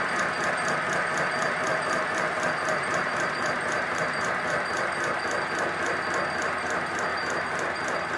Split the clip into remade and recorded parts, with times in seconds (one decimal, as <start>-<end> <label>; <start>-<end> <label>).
0.0-1.7 recorded; 1.7-4.5 remade; 4.5-7.1 recorded; 7.1-8.2 remade